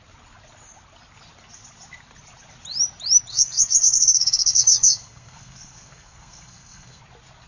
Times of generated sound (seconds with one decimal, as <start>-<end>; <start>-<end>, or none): 3.3-7.0